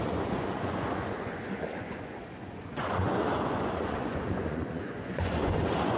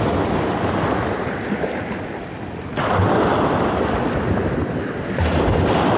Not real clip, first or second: first